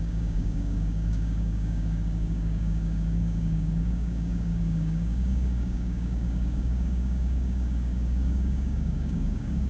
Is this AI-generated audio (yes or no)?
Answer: yes